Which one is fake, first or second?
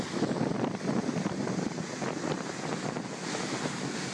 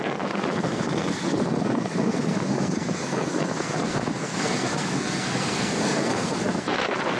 second